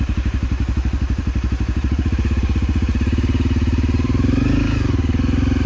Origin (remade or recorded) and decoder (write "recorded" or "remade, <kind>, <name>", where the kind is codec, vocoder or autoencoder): remade, vocoder, BigVGAN v2